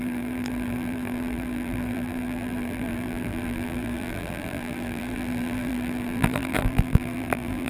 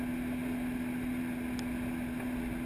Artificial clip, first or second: first